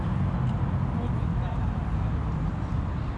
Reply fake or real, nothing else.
real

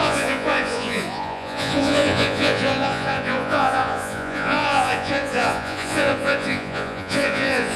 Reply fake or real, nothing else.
fake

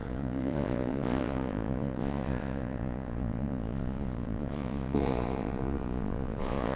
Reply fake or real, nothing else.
fake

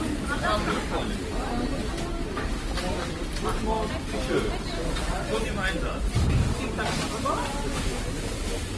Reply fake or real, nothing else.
real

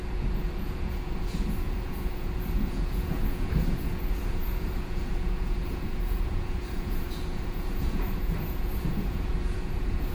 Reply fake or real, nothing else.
fake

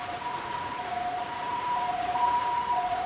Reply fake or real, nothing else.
fake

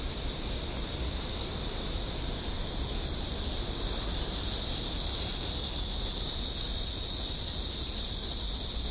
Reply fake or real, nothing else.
real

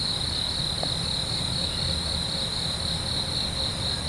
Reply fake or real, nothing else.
real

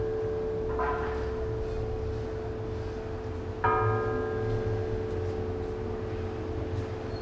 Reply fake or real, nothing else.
real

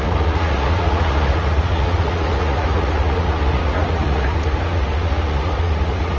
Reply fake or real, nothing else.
fake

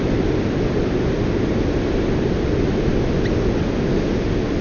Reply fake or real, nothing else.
real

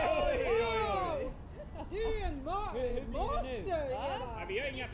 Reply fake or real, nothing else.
real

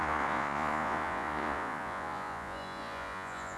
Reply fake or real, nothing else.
fake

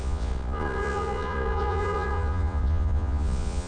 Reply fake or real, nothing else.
fake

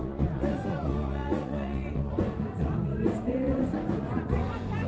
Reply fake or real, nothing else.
fake